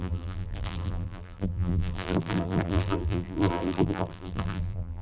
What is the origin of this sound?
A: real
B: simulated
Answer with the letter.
B